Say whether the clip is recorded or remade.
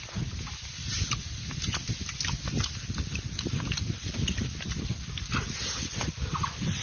recorded